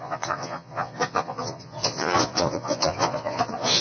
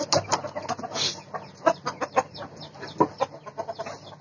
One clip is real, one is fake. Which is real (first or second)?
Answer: second